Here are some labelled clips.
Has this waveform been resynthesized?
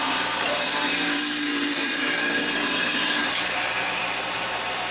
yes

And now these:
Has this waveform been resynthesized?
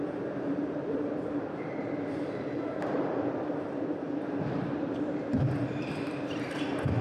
yes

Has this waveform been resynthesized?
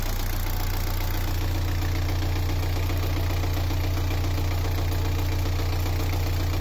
no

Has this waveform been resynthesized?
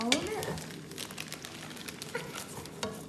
no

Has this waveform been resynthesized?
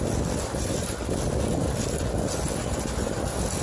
no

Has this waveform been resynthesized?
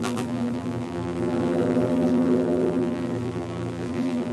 yes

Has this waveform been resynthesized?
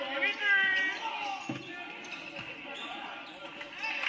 no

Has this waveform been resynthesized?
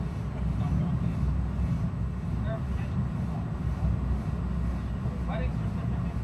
no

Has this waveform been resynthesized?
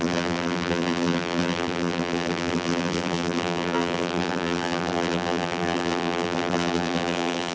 yes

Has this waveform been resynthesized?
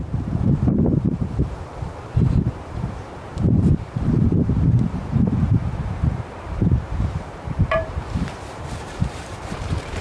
yes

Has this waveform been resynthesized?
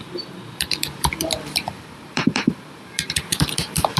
yes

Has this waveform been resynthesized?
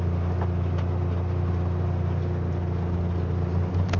no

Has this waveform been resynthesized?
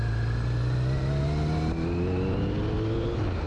no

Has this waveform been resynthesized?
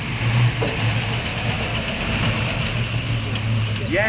no